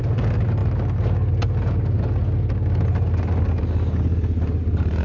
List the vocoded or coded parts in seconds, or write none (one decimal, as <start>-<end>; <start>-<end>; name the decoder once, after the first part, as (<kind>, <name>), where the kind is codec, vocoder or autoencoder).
none